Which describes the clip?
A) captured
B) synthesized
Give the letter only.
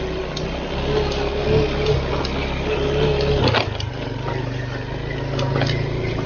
A